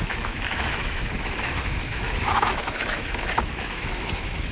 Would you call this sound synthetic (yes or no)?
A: yes